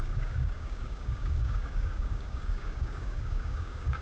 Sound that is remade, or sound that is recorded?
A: remade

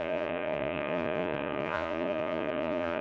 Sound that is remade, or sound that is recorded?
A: remade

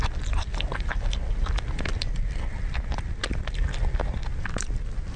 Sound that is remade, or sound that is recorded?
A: recorded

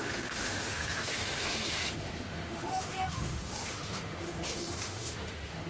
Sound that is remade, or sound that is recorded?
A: remade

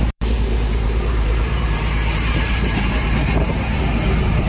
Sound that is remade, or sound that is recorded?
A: remade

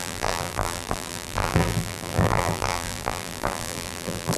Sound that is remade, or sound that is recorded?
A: remade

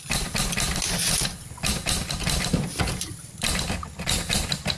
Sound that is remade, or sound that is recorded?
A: recorded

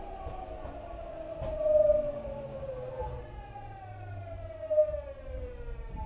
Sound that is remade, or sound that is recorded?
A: recorded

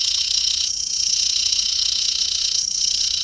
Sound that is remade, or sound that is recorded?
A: remade